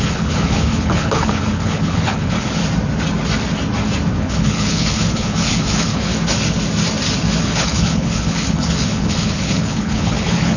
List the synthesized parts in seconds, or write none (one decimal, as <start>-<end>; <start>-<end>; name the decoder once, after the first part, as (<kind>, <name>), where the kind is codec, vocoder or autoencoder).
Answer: 0.0-2.6 (codec, HILCodec); 4.2-6.1; 7.4-10.6